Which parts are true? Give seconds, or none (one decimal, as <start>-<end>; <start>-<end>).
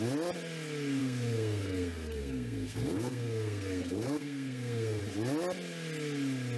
0.0-1.0; 5.0-6.6